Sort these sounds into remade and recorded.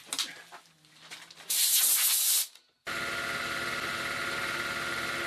recorded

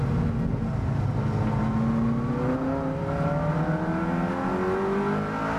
recorded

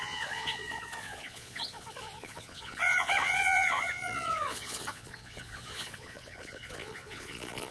remade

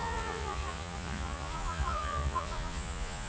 remade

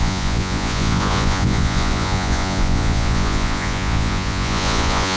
remade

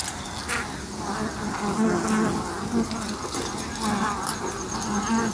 recorded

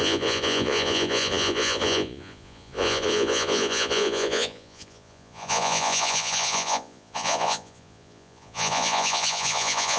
remade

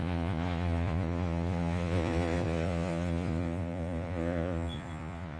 remade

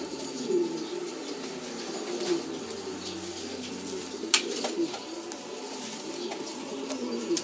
recorded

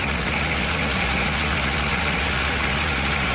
remade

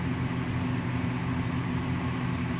recorded